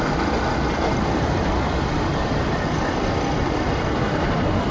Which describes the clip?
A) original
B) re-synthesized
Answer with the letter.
A